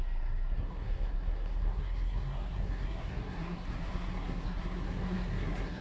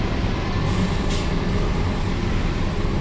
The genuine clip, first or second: second